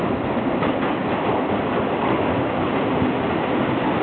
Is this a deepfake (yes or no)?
no